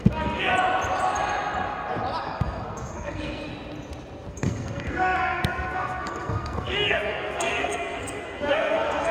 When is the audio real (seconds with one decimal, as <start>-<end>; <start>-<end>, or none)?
0.5-2.2; 3.5-4.3